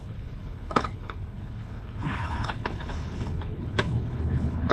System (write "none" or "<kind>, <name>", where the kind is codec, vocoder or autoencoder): codec, HILCodec